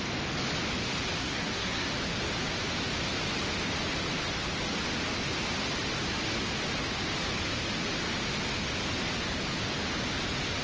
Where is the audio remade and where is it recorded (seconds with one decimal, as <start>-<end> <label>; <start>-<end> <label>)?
0.0-1.2 recorded; 1.2-1.9 remade; 1.9-10.6 recorded